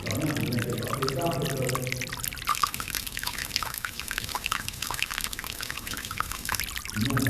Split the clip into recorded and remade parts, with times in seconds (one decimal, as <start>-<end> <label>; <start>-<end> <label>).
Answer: 0.0-2.5 recorded; 2.5-6.6 remade; 6.6-7.3 recorded